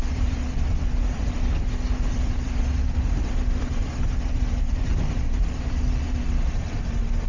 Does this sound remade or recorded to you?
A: remade